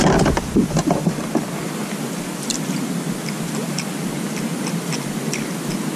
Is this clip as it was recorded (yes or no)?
yes